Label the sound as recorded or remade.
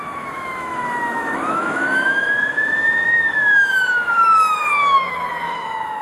remade